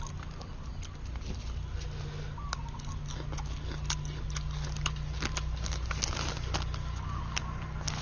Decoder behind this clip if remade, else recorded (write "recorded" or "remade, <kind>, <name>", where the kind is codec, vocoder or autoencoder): recorded